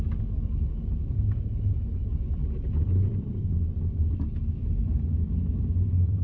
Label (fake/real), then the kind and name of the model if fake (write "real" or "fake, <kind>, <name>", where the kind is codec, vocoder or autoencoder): fake, vocoder, BigVGAN v2